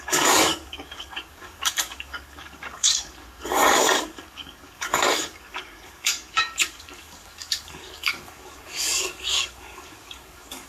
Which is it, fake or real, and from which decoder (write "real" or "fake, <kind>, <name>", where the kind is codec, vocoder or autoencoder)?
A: fake, codec, DAC